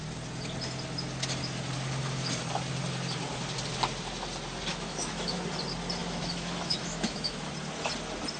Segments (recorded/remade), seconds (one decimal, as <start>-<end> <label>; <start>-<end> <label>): 0.0-4.7 recorded; 4.7-5.4 remade; 5.4-6.0 recorded; 6.0-7.5 remade; 7.5-8.4 recorded